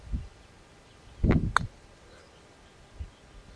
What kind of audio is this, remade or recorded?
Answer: recorded